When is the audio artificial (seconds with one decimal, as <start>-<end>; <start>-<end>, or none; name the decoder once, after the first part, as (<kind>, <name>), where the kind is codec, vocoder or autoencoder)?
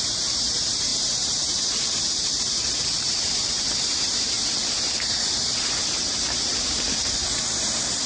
0.0-8.1 (vocoder, BigVGAN v2)